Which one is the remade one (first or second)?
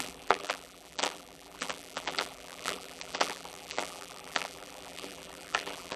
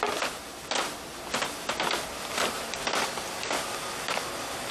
first